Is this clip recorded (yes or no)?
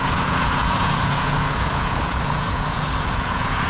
no